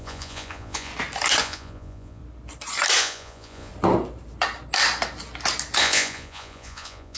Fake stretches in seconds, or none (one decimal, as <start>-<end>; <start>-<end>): 0.0-0.9; 1.4-2.2; 3.0-3.7; 5.8-7.2